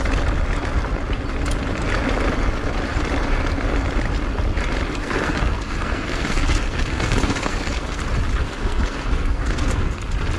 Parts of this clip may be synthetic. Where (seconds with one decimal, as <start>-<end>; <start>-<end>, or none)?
5.0-8.0; 8.4-10.0